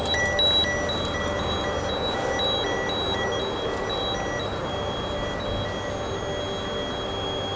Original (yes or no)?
yes